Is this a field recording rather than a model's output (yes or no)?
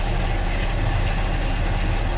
yes